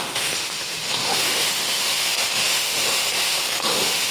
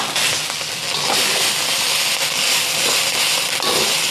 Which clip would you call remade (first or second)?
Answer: first